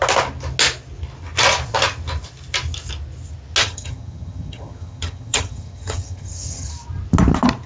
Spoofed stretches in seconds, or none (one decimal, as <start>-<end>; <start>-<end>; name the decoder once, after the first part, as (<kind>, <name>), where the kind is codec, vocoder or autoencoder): 3.6-6.7 (vocoder, HiFi-GAN)